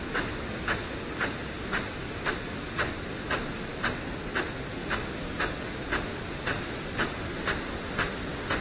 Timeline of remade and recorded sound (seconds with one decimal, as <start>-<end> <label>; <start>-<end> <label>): 0.0-8.6 recorded